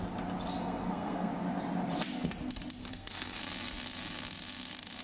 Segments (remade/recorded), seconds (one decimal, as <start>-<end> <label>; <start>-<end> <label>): 0.0-0.5 recorded; 0.5-1.3 remade; 1.3-2.8 recorded; 2.8-3.4 remade; 3.4-5.0 recorded